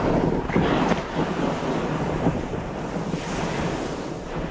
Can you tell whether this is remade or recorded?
recorded